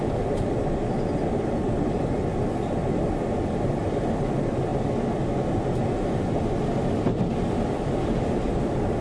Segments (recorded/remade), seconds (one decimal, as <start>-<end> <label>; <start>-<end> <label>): 0.0-4.7 remade; 4.7-9.0 recorded